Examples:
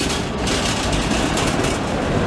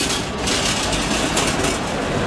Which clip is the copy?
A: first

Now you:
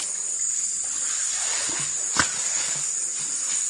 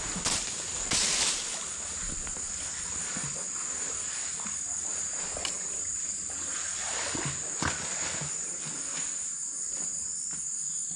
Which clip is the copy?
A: first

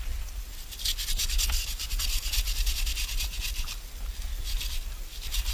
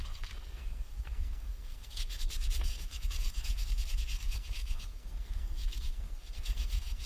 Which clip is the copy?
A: second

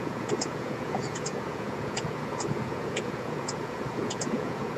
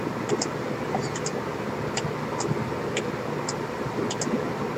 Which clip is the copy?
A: first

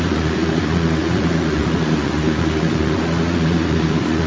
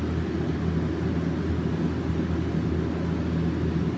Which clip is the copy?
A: first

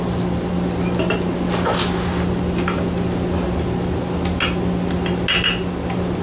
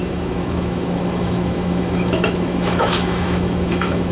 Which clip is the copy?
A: second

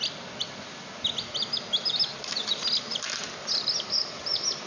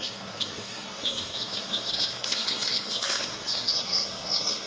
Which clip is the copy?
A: second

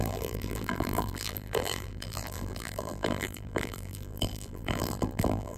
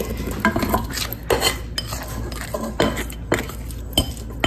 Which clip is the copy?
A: first